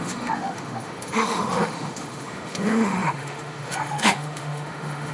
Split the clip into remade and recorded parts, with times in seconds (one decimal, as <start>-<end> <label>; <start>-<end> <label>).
0.0-5.1 remade